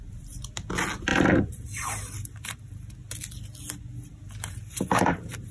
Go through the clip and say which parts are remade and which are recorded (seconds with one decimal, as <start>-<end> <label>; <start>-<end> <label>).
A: 0.0-1.1 recorded; 1.1-2.9 remade; 2.9-4.1 recorded; 4.1-5.5 remade